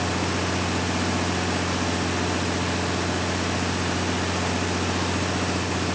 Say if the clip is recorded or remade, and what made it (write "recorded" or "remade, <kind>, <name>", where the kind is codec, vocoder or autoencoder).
recorded